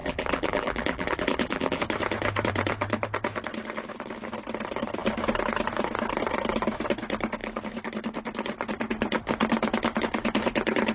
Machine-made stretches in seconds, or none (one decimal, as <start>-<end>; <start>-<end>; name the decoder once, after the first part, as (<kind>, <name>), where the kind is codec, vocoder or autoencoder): 0.0-1.8 (vocoder, BigVGAN v2)